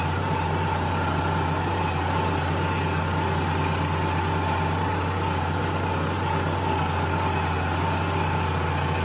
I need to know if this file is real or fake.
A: real